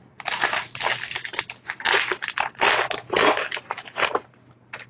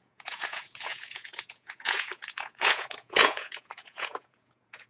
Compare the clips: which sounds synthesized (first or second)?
second